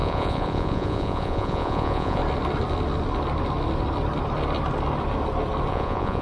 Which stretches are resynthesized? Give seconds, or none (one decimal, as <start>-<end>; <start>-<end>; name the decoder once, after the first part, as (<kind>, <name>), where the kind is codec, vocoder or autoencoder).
0.0-2.2 (vocoder, Vocos); 5.7-6.2